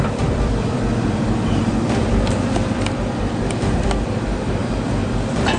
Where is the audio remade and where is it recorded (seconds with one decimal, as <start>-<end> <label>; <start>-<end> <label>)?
0.0-5.6 remade